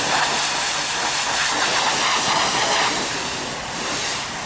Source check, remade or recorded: recorded